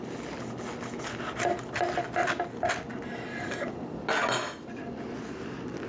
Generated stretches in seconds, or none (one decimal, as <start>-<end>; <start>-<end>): none